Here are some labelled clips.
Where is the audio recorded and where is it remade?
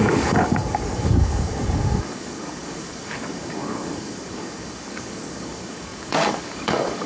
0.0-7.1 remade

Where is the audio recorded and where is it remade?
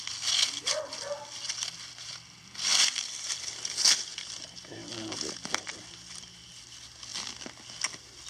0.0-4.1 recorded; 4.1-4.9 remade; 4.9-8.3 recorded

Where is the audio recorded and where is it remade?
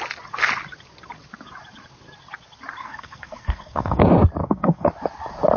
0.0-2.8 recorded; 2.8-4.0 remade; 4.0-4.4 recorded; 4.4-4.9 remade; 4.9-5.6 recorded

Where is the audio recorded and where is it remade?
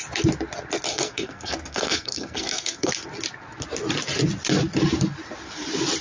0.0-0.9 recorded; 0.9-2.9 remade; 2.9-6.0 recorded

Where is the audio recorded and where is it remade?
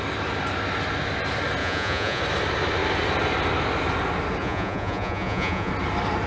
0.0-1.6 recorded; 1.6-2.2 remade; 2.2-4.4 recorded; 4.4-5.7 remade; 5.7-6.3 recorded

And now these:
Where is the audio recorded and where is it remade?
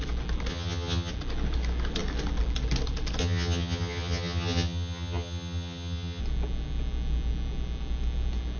0.0-0.5 recorded; 0.5-1.1 remade; 1.1-3.2 recorded; 3.2-6.2 remade; 6.2-8.6 recorded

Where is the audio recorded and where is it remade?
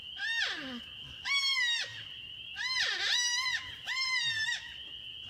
0.0-5.3 recorded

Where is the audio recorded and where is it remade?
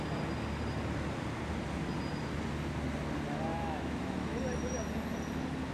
0.0-3.5 recorded; 3.5-4.4 remade; 4.4-5.7 recorded